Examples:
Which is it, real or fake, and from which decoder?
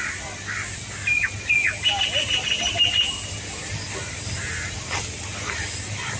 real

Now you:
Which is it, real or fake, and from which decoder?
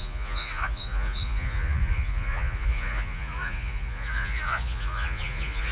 fake, vocoder, Vocos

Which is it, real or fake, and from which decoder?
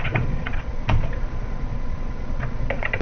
fake, vocoder, Vocos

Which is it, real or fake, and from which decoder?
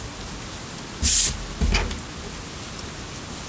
real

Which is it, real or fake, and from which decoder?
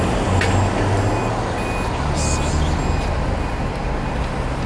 real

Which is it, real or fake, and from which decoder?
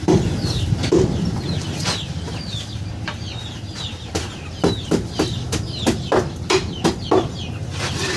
real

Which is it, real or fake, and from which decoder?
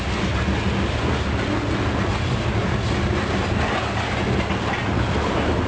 real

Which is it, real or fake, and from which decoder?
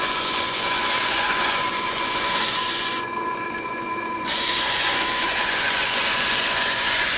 fake, vocoder, Vocos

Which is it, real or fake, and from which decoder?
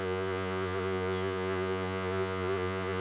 fake, vocoder, Vocos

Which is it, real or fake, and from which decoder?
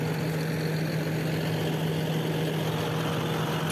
real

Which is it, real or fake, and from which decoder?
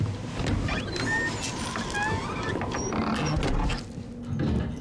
real